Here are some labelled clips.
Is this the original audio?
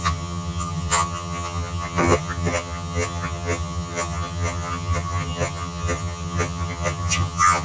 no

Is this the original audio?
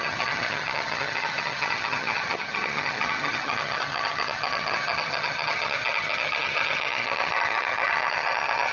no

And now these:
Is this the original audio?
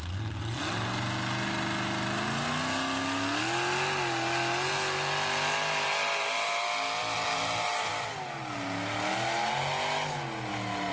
yes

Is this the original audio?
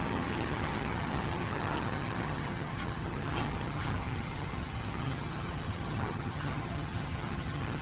no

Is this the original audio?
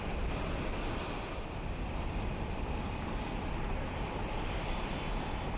yes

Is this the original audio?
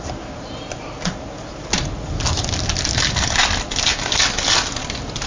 yes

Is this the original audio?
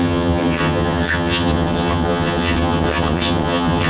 no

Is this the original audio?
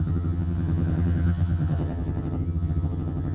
no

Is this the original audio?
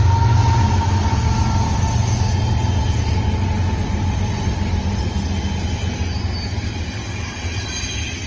yes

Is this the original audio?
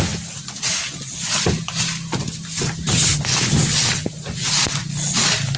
yes